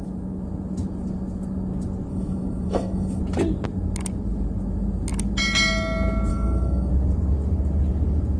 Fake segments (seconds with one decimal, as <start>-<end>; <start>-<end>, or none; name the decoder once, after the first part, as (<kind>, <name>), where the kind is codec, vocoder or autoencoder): 2.1-3.2 (autoencoder, DAC-VAE); 6.3-6.9